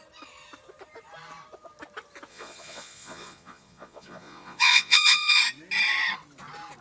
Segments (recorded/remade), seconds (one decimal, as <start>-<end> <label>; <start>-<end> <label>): 0.0-2.3 recorded; 2.3-5.4 remade; 5.4-6.8 recorded